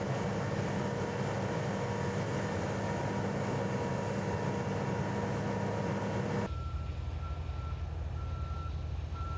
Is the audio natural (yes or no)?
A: yes